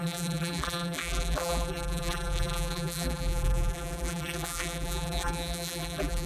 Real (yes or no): no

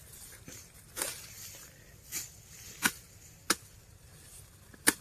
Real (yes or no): yes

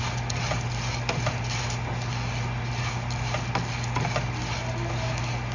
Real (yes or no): yes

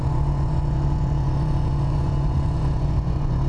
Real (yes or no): no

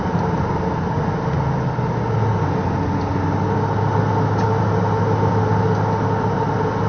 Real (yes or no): yes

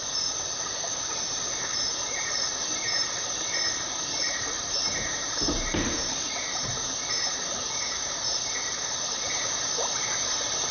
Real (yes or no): no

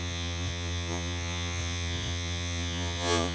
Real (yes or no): no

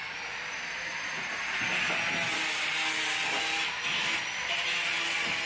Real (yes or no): yes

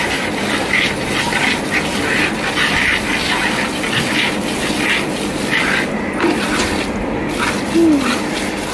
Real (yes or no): yes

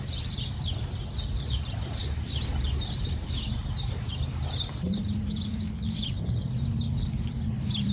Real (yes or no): no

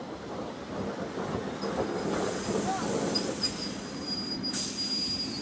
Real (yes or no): yes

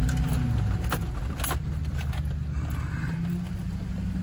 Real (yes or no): yes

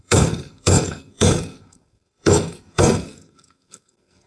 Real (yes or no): no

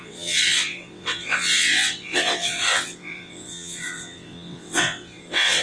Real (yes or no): no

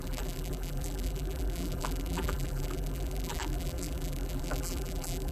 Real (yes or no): no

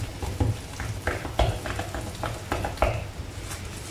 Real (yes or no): yes